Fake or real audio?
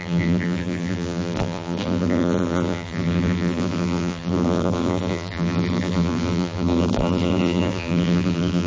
fake